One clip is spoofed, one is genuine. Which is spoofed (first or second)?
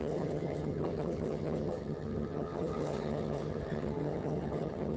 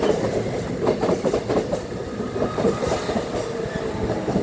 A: first